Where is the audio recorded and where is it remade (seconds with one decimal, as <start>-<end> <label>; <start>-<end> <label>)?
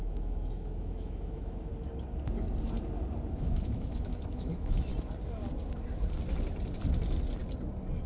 0.0-1.7 remade; 1.7-3.3 recorded; 3.3-4.9 remade; 4.9-8.1 recorded